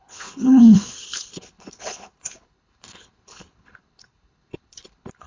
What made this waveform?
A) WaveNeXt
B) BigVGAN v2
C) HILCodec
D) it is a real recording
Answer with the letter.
C